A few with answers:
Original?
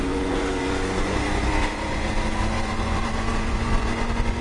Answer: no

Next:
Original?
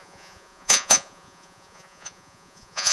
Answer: no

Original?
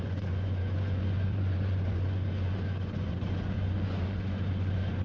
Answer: no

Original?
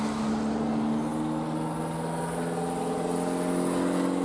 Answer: yes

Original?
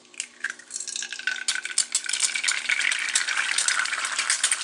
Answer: yes